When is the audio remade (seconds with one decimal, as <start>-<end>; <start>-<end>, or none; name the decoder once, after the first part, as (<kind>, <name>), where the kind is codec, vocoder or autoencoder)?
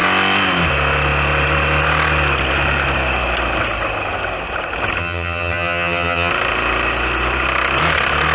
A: 5.0-6.3 (vocoder, HiFi-GAN)